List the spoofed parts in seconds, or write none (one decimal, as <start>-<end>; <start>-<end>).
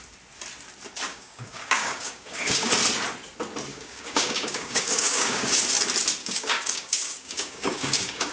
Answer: 1.1-2.7; 3.7-5.6; 6.2-8.3